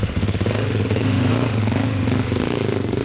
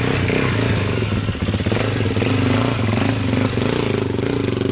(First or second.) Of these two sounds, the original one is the second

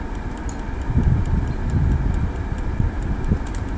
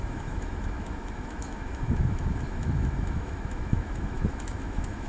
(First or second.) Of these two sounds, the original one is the first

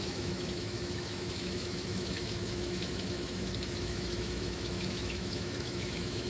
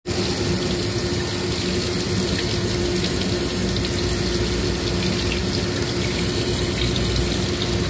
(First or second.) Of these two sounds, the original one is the second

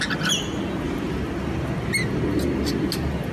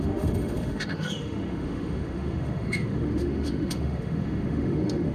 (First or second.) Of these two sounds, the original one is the first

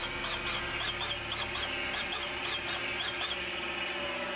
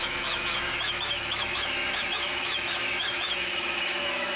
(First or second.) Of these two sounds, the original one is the first